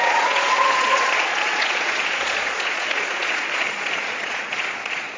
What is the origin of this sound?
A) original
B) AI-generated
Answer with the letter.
B